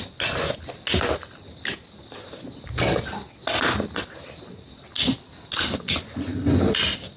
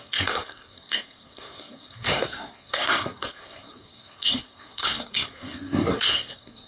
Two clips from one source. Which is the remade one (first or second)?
second